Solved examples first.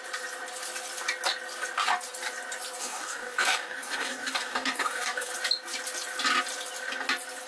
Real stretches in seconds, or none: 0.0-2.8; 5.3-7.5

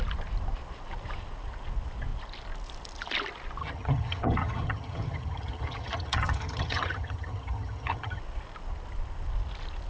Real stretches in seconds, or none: 0.0-3.6; 8.2-9.9

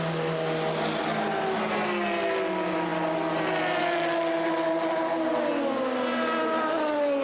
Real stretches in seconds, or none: 0.0-7.2

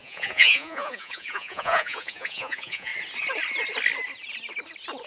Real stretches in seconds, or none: 2.9-5.1

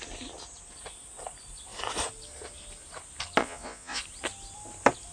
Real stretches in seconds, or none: 0.0-3.4; 4.0-5.1

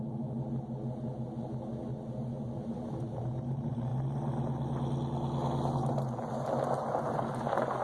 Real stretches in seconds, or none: 0.0-7.8

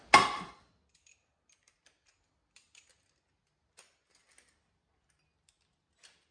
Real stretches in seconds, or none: 0.0-6.3

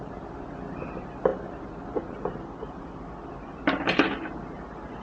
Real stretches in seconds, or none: 0.0-5.0